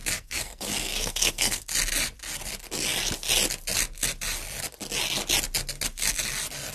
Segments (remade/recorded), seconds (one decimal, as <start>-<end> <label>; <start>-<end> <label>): 0.0-1.7 remade; 1.7-6.7 recorded